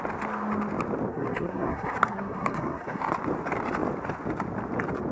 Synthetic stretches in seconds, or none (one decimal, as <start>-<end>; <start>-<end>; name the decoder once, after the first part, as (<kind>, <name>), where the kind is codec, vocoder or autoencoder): 1.1-3.0 (codec, SNAC)

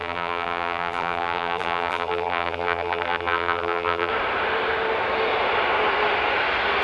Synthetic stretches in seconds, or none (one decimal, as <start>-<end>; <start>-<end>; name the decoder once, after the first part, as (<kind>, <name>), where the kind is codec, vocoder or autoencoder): 0.0-4.1 (vocoder, BigVGAN v2)

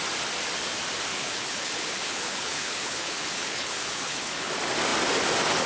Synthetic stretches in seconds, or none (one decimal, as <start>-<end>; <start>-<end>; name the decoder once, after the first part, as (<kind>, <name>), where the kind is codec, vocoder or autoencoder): 1.1-4.5 (codec, HILCodec)

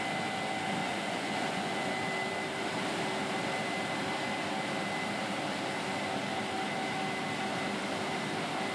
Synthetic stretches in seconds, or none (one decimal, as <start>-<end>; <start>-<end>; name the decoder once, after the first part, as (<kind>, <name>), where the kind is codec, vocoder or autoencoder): 0.8-1.9 (vocoder, Vocos)

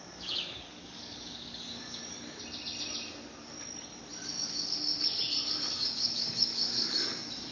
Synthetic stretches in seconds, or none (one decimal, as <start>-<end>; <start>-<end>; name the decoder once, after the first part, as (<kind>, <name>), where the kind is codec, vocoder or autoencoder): 0.0-2.0 (codec, DAC); 4.3-4.9; 5.5-7.5